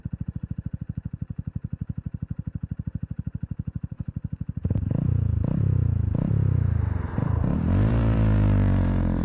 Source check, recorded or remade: remade